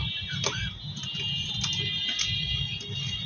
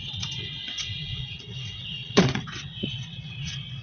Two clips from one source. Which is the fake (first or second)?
second